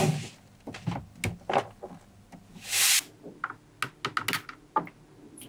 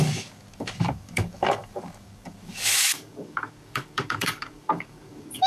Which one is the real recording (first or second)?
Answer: first